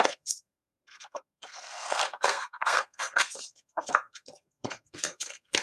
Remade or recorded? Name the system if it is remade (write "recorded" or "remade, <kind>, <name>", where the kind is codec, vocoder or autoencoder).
remade, codec, SNAC